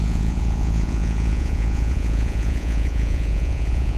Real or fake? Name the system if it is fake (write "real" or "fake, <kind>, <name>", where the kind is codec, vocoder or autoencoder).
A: fake, vocoder, Vocos